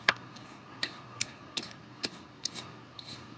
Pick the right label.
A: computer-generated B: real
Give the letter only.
A